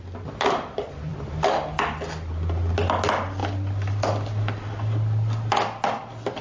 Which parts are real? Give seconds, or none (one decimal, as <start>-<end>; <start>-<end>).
0.0-6.4

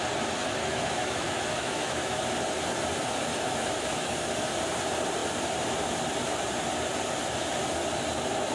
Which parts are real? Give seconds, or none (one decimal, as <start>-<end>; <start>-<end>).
0.0-0.6; 2.2-3.3; 4.3-8.5

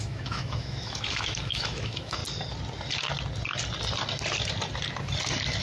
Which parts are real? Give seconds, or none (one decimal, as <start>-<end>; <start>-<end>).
2.2-5.6

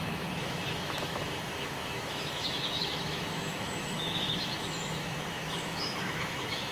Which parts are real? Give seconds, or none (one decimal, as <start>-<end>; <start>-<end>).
none

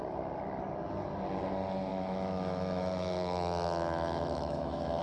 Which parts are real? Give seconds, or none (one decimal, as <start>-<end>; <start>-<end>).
0.0-1.9

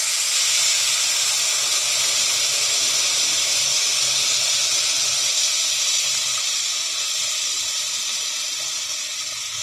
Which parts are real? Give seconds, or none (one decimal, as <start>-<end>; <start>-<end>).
0.0-9.6